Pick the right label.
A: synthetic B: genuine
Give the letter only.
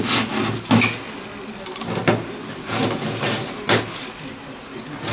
B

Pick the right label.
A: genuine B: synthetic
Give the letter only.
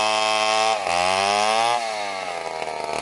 A